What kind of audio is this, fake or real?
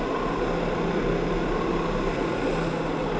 real